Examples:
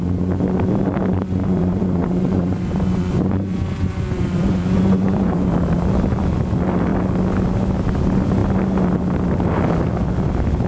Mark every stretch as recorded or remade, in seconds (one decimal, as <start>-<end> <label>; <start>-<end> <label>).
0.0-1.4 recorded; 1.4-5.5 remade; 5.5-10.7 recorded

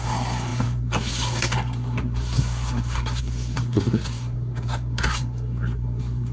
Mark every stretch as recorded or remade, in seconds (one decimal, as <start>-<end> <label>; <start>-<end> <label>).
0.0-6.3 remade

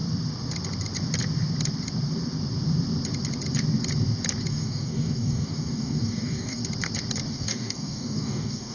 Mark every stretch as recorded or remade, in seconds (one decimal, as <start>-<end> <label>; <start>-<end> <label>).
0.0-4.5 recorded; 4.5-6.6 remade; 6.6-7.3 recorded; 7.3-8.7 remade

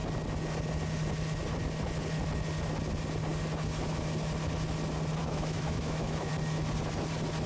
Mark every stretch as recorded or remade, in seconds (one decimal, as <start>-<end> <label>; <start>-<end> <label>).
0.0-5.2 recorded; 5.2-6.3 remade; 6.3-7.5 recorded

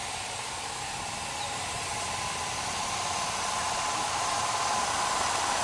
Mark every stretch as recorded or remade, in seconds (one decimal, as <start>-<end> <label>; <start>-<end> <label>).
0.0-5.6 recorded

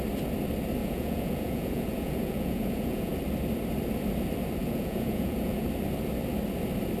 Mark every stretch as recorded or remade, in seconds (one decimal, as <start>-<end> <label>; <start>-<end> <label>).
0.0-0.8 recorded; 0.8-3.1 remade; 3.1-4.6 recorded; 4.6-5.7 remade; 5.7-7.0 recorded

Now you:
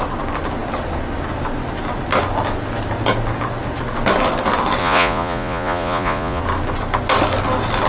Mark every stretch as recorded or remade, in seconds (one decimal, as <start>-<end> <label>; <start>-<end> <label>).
0.0-4.8 recorded; 4.8-6.4 remade; 6.4-7.9 recorded